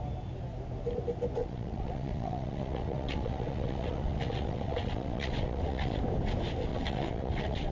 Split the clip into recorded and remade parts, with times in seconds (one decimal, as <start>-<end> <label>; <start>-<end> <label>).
0.0-1.4 recorded; 1.4-6.0 remade; 6.0-6.7 recorded; 6.7-7.7 remade